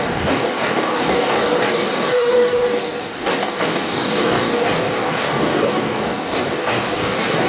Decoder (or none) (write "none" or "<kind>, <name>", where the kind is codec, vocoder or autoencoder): codec, DAC